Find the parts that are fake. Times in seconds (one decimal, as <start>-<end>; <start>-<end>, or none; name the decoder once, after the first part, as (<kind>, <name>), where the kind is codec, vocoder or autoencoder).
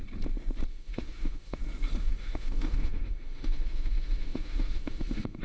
0.7-1.6 (autoencoder, DAC-VAE); 2.0-5.4